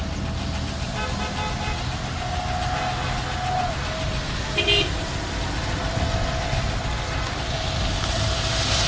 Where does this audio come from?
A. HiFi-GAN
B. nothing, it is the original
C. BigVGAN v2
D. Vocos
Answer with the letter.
B